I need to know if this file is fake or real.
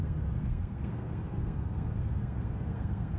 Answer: fake